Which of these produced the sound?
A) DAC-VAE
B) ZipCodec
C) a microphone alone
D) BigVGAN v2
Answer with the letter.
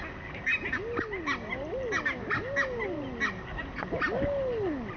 C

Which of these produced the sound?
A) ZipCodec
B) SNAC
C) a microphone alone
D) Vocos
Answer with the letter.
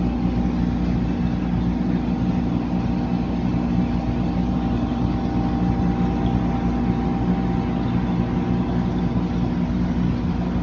C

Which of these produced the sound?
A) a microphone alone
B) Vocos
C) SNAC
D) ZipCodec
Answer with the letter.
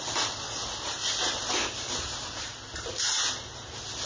A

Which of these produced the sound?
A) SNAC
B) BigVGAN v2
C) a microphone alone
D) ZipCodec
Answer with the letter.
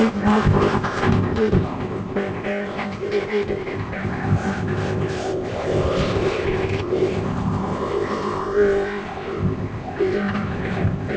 D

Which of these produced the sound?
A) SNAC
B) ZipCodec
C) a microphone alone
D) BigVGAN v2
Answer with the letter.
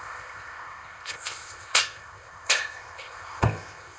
B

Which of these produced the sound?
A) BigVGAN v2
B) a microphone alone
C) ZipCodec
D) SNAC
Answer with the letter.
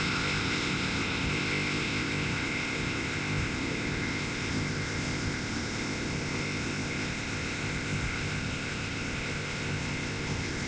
C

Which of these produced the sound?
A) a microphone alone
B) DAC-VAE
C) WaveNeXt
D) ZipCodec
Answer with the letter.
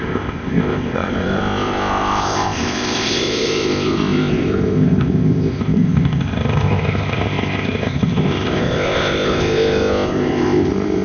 D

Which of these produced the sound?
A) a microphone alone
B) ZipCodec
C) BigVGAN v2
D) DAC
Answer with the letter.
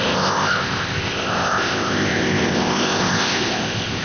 B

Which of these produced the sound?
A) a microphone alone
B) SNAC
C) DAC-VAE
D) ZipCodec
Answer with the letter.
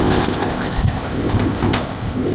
D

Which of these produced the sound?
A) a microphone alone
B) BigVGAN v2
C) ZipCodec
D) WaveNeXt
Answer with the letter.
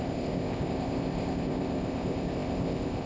C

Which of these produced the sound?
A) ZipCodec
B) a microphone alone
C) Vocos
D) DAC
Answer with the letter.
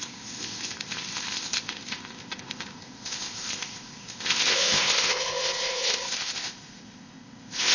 A